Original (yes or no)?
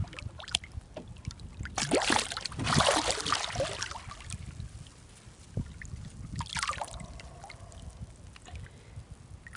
yes